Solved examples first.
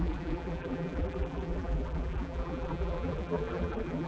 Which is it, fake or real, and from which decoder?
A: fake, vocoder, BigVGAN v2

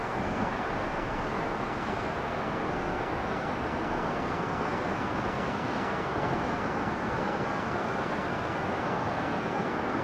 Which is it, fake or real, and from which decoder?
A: fake, codec, SNAC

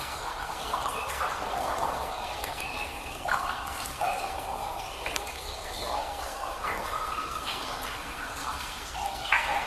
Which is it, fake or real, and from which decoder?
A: fake, codec, SNAC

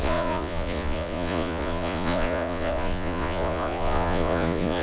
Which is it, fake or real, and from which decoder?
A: fake, vocoder, Vocos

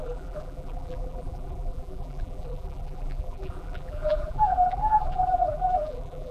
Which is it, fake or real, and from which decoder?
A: fake, vocoder, BigVGAN v2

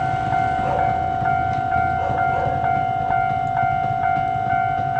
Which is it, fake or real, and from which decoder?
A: real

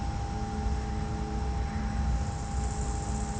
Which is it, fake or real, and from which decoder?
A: real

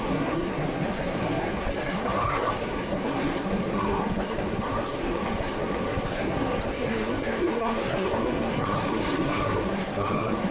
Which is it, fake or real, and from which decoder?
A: fake, codec, SNAC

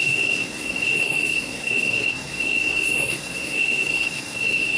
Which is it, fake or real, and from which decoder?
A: fake, codec, SNAC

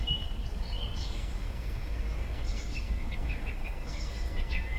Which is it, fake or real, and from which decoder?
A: fake, codec, SNAC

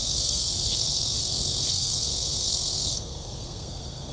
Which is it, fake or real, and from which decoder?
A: fake, codec, SNAC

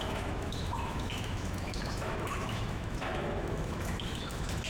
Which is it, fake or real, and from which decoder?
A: fake, autoencoder, DAC-VAE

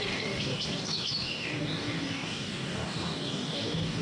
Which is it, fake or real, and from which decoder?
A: fake, codec, DAC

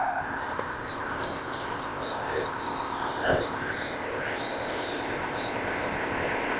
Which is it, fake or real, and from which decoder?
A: fake, codec, ZipCodec